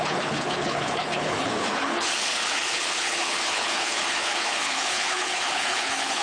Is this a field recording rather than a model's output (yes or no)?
no